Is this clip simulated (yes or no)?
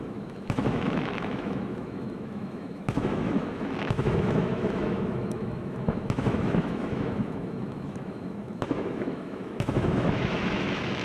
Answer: yes